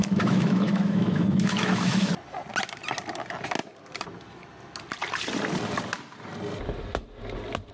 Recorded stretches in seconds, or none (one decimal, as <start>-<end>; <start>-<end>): 2.1-7.7